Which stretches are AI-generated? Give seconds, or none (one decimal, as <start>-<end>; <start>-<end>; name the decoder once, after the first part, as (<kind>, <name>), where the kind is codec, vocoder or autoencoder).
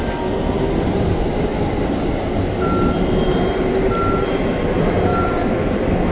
5.1-6.1 (vocoder, BigVGAN v2)